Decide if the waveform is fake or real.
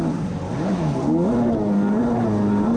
real